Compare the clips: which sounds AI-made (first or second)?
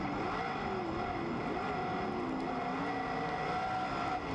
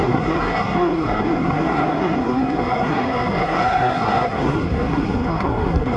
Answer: second